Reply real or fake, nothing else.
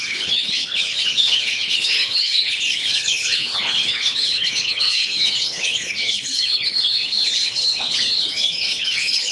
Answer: fake